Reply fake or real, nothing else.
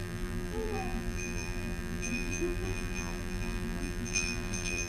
fake